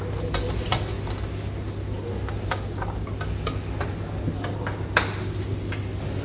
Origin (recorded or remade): recorded